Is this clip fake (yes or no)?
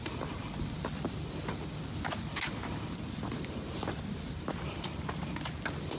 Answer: no